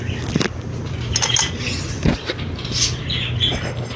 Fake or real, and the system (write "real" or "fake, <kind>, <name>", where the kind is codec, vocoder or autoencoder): real